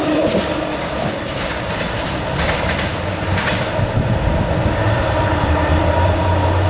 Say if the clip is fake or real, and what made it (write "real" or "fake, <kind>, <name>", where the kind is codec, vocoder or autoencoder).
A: fake, vocoder, BigVGAN v2